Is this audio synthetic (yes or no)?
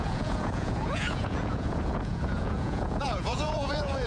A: yes